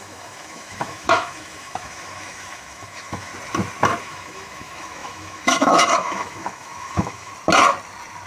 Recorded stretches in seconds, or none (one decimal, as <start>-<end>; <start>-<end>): 3.3-4.0; 7.3-8.3

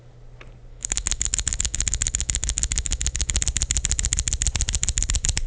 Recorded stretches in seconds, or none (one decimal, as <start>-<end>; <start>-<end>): 0.0-0.7; 3.4-5.5

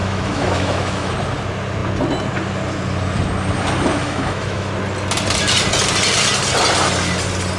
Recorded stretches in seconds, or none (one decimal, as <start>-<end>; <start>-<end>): 1.1-4.0; 4.7-7.6

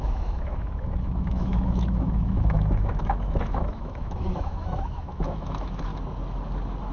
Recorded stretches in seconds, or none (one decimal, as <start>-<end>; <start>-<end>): 5.9-6.9

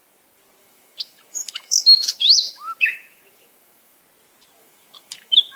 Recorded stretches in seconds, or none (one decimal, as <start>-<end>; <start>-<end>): 0.0-0.6; 4.0-4.6

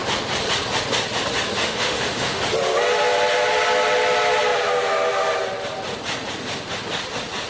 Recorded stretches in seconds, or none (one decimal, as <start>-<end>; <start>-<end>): 0.0-1.6; 2.4-7.5

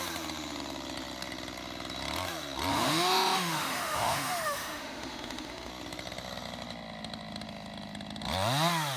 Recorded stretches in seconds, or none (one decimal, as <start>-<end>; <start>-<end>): 0.0-2.7; 5.7-9.0

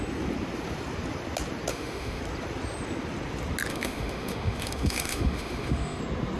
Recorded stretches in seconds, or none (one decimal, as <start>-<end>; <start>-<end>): 0.0-1.7; 2.2-3.7; 6.0-6.4